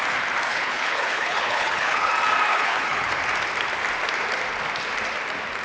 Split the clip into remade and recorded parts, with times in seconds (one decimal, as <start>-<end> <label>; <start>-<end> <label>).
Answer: 0.0-0.5 recorded; 0.5-2.1 remade; 2.1-2.5 recorded; 2.5-3.1 remade; 3.1-5.6 recorded